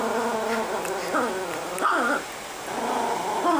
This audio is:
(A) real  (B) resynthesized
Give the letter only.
A